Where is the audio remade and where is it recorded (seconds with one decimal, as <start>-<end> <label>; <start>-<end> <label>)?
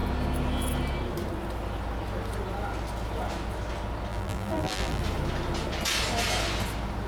0.0-4.1 recorded; 4.1-5.0 remade; 5.0-7.1 recorded